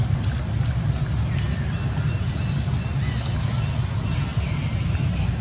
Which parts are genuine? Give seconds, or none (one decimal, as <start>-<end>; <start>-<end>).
0.0-5.4